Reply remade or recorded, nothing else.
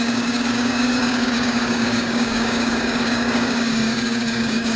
remade